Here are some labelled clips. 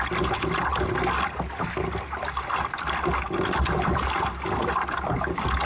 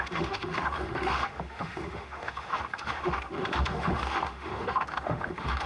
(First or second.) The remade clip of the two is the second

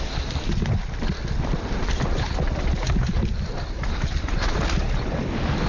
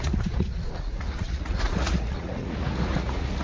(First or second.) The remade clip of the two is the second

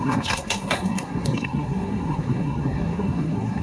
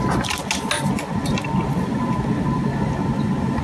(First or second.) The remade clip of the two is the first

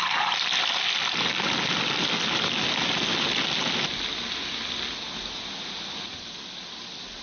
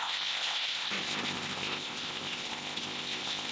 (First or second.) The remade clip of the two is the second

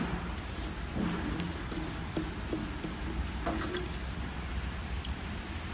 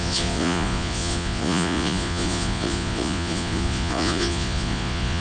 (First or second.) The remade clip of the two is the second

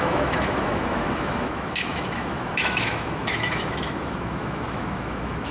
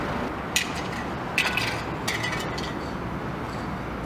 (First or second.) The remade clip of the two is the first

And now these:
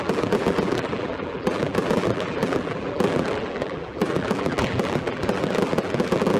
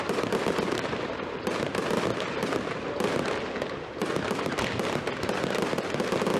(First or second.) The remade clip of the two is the first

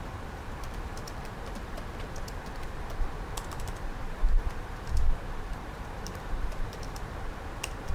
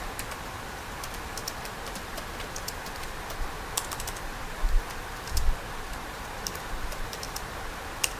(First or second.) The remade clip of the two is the first